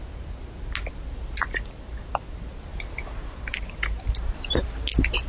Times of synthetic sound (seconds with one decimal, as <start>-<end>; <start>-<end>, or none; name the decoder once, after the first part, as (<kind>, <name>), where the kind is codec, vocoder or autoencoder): none